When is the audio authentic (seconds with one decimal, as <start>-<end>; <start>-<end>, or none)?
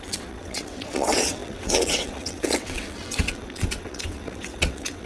none